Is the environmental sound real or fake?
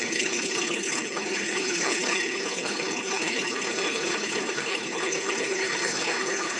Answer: fake